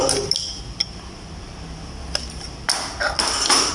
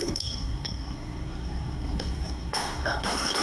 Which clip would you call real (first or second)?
first